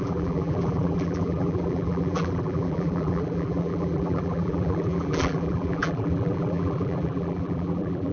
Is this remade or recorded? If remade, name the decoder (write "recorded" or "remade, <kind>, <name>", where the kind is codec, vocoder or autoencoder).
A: remade, vocoder, BigVGAN v2